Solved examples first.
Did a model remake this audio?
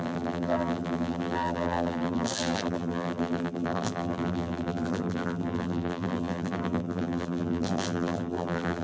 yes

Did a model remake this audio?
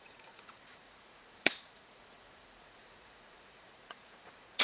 yes